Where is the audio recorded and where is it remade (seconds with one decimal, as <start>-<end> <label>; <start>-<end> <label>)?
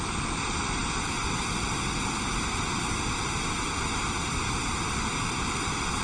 0.0-6.0 recorded